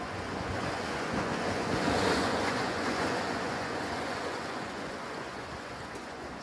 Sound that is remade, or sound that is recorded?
remade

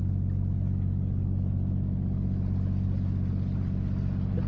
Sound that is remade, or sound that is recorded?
recorded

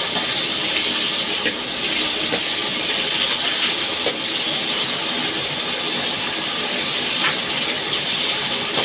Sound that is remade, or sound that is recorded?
recorded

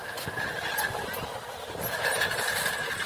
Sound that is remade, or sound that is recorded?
remade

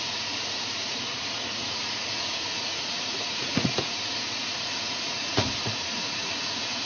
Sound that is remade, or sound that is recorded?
remade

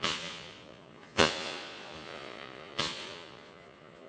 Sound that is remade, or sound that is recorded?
remade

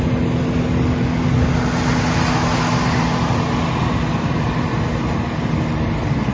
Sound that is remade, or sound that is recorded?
recorded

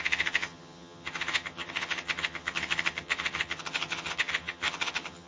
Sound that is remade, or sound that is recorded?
remade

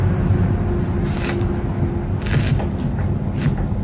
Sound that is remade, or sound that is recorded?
recorded